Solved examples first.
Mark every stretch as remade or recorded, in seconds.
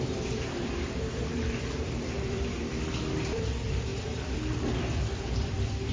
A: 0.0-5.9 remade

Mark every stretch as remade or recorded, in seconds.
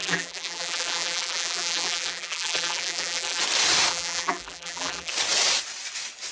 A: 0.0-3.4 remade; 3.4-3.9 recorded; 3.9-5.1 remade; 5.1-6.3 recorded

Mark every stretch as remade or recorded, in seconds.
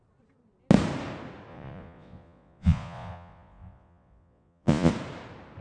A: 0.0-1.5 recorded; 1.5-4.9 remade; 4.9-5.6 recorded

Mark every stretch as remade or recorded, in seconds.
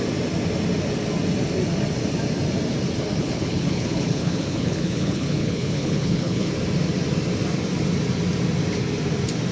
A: 0.0-3.2 recorded; 3.2-6.5 remade; 6.5-9.5 recorded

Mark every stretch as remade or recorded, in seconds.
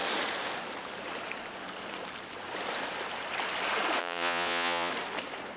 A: 0.0-4.0 recorded; 4.0-4.9 remade; 4.9-5.6 recorded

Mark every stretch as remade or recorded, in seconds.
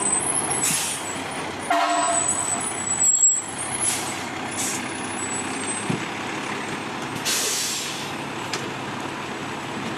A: 0.0-3.1 recorded; 3.1-4.3 remade; 4.3-10.0 recorded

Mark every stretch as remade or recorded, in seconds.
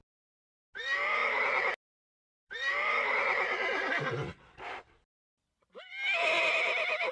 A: 0.0-1.2 recorded; 1.2-1.7 remade; 1.7-2.1 recorded; 2.1-5.9 remade; 5.9-7.1 recorded